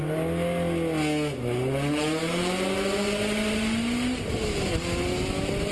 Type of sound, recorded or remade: recorded